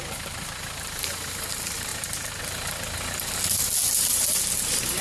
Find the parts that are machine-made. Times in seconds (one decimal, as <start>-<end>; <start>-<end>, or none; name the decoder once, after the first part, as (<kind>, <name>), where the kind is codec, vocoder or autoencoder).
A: none